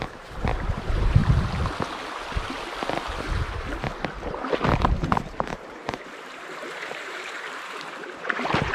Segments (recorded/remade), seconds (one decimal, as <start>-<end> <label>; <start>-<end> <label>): 0.0-1.2 remade; 1.2-4.6 recorded; 4.6-8.7 remade